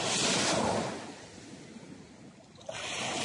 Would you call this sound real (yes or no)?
yes